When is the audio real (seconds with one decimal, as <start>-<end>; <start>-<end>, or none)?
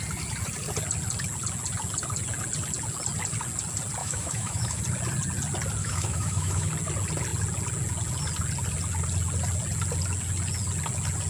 0.0-4.0; 4.8-5.8; 6.7-11.3